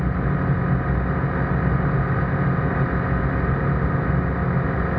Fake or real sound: real